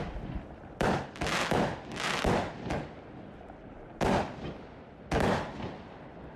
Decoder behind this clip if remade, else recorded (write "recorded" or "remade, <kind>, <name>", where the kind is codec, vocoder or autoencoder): recorded